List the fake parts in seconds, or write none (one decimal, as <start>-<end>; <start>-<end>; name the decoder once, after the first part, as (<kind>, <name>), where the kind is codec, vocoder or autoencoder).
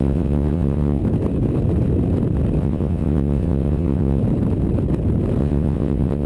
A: 0.0-1.0 (vocoder, WaveNeXt); 2.6-4.2; 5.4-6.3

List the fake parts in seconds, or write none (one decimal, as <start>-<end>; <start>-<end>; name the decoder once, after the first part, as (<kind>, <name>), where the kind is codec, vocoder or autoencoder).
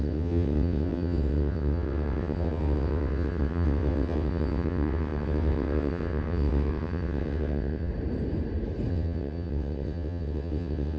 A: 0.0-7.9 (vocoder, WaveNeXt); 8.9-11.0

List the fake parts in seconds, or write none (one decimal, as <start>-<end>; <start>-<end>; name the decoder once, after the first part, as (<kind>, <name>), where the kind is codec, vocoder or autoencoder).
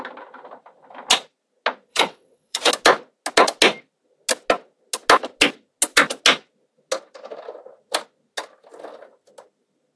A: 1.9-2.7 (vocoder, WaveNeXt)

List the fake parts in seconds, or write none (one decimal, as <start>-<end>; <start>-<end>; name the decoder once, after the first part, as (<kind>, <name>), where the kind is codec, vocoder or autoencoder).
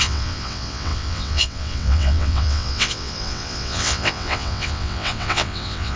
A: 0.0-6.0 (vocoder, WaveNeXt)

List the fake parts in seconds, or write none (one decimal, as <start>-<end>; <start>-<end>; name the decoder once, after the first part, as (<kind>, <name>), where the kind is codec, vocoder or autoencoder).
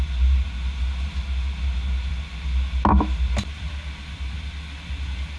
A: none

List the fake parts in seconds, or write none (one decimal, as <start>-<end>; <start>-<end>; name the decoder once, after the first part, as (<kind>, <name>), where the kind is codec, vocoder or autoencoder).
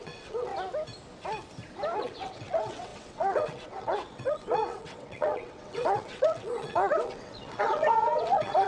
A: 0.0-0.5 (vocoder, WaveNeXt); 2.0-8.7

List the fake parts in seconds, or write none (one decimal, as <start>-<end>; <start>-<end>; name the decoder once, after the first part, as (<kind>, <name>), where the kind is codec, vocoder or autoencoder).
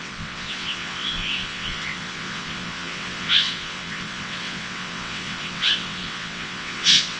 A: 0.0-7.2 (vocoder, WaveNeXt)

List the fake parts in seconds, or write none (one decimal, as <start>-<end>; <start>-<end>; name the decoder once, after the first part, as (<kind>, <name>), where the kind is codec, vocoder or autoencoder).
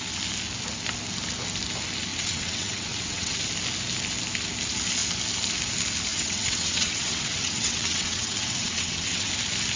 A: 2.1-3.4 (vocoder, WaveNeXt); 6.1-9.3